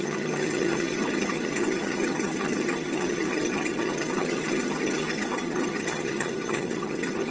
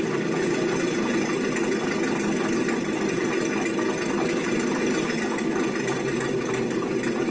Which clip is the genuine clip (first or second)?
second